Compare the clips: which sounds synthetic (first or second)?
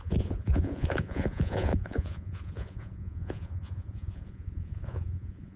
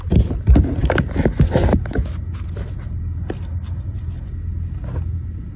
first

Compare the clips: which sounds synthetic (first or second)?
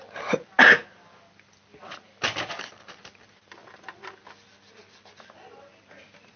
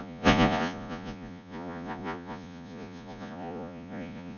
second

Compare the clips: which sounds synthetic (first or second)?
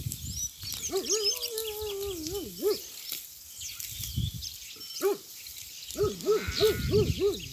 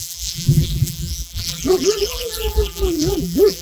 second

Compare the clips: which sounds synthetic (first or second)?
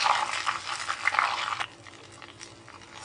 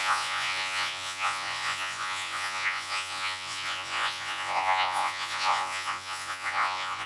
second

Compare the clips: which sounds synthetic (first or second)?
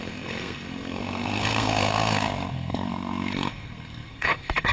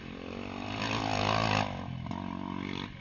first